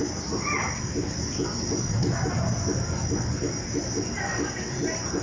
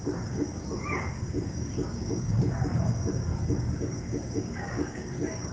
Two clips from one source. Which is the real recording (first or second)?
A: first